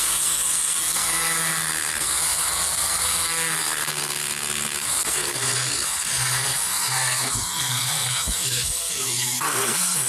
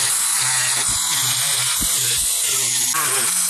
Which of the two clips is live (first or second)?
second